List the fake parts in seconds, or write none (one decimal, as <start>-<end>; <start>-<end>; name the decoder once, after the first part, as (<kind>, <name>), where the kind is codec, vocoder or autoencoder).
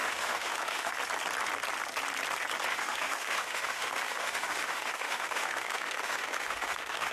0.0-0.9 (autoencoder, DAC-VAE); 2.7-7.1